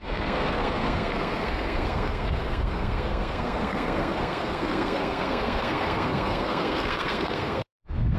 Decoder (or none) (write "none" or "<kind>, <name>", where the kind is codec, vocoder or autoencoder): codec, SNAC